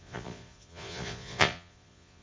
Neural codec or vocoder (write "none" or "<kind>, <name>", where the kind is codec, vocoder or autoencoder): vocoder, Vocos